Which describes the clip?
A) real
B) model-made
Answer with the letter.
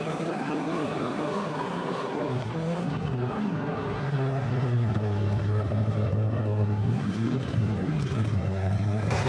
B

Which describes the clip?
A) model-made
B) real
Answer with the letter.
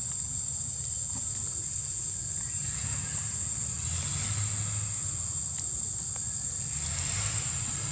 B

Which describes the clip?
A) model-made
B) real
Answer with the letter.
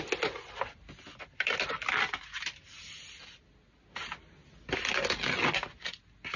B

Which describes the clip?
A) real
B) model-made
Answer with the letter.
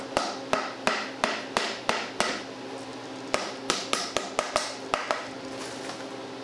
A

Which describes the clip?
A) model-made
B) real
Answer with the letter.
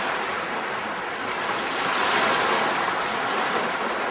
B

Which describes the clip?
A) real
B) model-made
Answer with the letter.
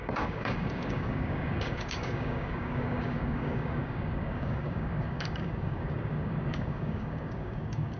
B